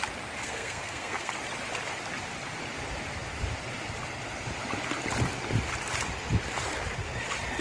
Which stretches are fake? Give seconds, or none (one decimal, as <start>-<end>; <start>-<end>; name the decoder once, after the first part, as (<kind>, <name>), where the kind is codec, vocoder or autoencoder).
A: 0.4-1.3 (codec, SNAC)

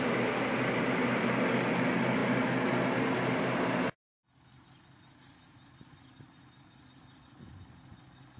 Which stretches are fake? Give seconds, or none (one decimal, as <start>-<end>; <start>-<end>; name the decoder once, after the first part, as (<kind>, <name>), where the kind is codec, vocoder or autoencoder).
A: none

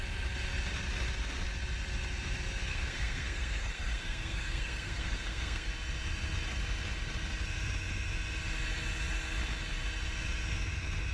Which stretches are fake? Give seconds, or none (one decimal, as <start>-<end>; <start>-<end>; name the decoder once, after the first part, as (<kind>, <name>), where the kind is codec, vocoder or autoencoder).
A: 2.7-5.7 (codec, SNAC)

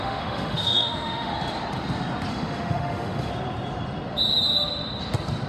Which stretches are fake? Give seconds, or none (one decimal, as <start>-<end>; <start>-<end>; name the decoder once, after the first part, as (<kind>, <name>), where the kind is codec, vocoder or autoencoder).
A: 0.0-1.3 (autoencoder, DAC-VAE); 2.3-3.3

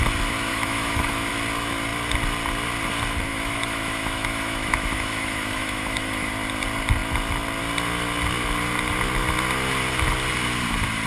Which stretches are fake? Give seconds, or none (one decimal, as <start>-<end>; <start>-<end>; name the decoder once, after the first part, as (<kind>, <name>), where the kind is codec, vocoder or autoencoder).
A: 0.5-1.3 (autoencoder, DAC-VAE); 3.3-6.3

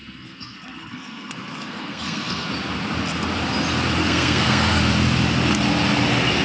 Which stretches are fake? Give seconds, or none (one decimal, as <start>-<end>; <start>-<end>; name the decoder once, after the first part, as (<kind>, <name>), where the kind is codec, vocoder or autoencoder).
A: 0.0-2.5 (codec, SNAC); 4.0-4.8

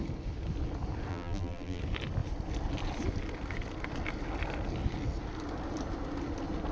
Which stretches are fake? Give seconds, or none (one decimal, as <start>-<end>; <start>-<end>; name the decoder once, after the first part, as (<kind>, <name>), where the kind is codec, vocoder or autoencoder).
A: 1.1-1.8 (vocoder, BigVGAN v2)